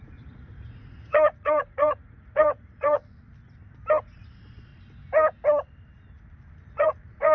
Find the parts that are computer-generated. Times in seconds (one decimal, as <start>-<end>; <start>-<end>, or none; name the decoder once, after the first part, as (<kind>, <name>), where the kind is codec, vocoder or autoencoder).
0.0-3.0 (vocoder, Vocos); 4.0-4.7; 6.7-7.3